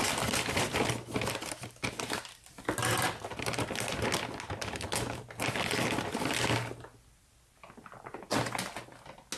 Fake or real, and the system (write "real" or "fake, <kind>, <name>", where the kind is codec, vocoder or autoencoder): real